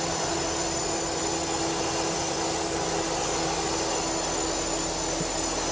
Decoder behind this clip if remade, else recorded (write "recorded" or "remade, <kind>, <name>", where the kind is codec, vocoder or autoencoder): recorded